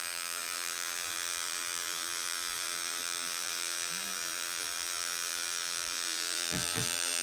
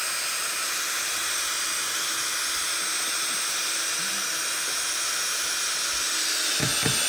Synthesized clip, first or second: first